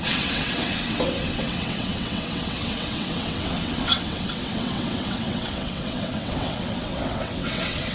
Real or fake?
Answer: fake